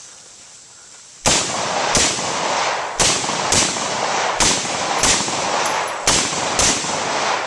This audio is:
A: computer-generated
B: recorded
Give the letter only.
B